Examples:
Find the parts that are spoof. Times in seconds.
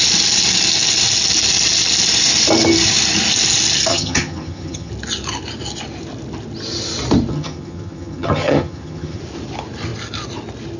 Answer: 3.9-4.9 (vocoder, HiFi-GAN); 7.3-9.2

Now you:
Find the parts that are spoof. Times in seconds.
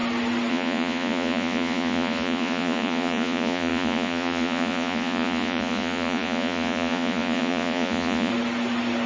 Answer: 0.5-8.3 (vocoder, Vocos)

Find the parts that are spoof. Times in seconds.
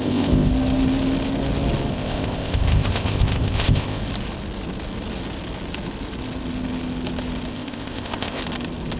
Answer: 0.0-0.5 (codec, ZipCodec); 1.9-4.0; 7.5-8.4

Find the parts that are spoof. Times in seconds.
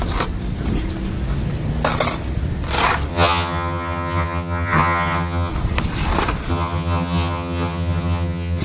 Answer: 3.1-5.5 (vocoder, HiFi-GAN); 6.5-8.6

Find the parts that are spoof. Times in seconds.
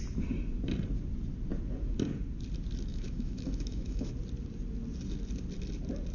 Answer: 2.9-4.1 (autoencoder, DAC-VAE)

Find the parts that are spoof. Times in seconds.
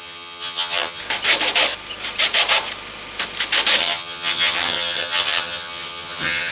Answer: 0.0-1.0 (vocoder, HiFi-GAN); 3.8-6.5